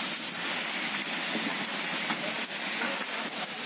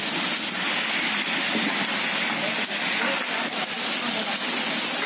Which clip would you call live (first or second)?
second